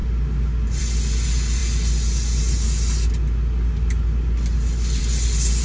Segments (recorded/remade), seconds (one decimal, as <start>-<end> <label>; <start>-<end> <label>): 0.0-5.6 recorded

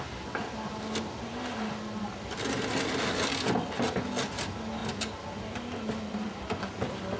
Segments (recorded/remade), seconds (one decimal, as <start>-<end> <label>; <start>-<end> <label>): 0.0-7.2 recorded

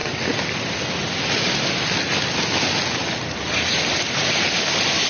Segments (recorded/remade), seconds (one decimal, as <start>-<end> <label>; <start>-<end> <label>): 0.0-5.1 recorded

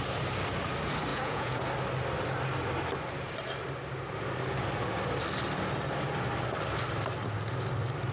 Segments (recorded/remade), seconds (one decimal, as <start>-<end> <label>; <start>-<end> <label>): 0.0-1.1 recorded; 1.1-1.6 remade; 1.6-8.1 recorded

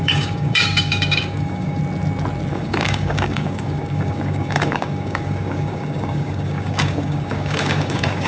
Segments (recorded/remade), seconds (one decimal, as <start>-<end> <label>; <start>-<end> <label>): 0.0-1.8 remade; 1.8-2.5 recorded; 2.5-8.3 remade

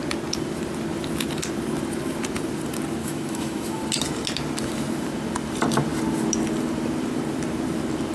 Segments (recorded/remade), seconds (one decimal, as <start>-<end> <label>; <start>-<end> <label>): 0.0-3.0 recorded; 3.0-3.8 remade; 3.8-8.1 recorded

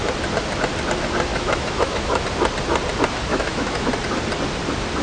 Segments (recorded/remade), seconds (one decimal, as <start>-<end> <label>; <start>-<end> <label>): 0.0-1.3 recorded; 1.3-2.2 remade; 2.2-3.3 recorded; 3.3-3.9 remade; 3.9-5.0 recorded